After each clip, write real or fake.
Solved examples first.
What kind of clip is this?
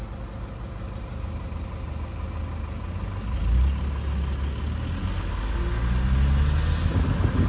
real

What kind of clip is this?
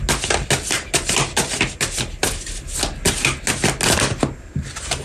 real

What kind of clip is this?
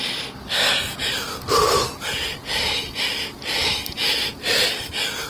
real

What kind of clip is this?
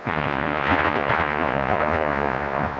fake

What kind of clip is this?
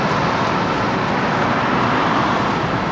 real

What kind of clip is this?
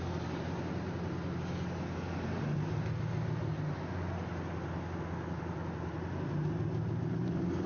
real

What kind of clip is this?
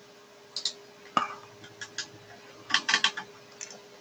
real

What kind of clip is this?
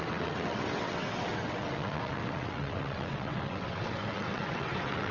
fake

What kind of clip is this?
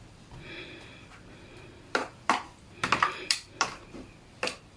fake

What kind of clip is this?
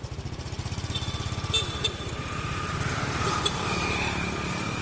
real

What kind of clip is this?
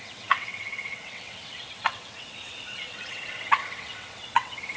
fake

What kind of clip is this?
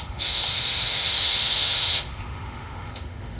fake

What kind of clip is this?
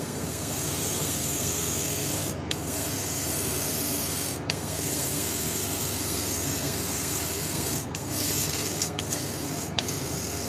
fake